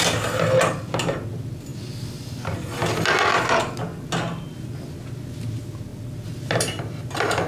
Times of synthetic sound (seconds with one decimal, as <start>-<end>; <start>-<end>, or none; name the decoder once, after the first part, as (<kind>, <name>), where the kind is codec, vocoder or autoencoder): 5.9-7.5 (vocoder, BigVGAN v2)